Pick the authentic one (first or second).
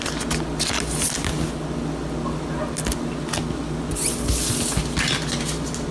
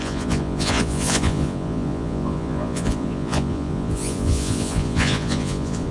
first